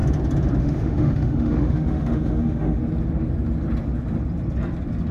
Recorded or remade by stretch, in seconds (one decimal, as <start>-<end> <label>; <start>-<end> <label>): 0.0-0.6 recorded; 0.6-2.8 remade; 2.8-5.1 recorded